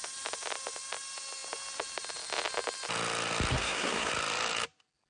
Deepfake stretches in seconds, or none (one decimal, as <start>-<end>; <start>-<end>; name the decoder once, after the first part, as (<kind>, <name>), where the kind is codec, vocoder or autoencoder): 3.5-4.1 (codec, SNAC)